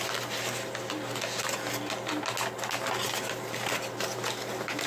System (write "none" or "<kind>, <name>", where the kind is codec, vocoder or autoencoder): none